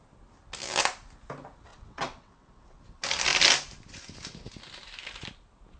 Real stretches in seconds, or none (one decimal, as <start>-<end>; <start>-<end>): 0.0-1.7; 2.8-5.8

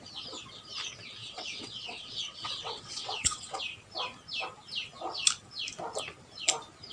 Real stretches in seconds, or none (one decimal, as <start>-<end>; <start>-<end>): 0.0-1.2; 3.6-6.9

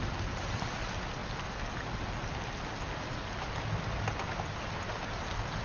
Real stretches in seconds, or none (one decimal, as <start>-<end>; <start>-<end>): 0.0-5.6

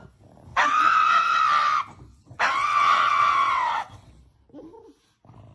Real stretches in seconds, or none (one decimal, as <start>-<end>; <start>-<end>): 0.0-0.5; 1.4-2.1; 4.1-5.5